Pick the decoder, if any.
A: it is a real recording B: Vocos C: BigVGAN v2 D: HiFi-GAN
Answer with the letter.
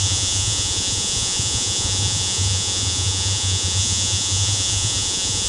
B